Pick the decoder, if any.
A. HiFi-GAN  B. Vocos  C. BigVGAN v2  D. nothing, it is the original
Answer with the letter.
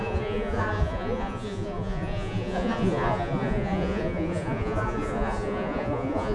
B